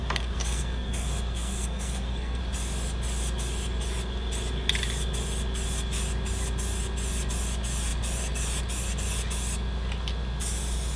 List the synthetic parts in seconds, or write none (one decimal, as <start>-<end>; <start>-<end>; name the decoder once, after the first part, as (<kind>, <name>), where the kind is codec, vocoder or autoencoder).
0.0-2.4 (codec, SNAC)

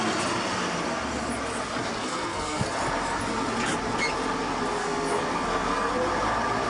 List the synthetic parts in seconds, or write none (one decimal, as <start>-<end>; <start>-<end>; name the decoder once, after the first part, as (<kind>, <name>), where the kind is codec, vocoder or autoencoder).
2.0-2.8 (codec, SNAC); 4.8-5.9

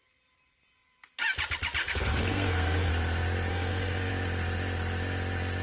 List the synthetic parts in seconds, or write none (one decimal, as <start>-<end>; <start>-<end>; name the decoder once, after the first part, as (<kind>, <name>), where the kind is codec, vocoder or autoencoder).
1.8-2.9 (codec, SNAC); 3.5-4.1